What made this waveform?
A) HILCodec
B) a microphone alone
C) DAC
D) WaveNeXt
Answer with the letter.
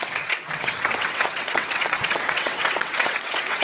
D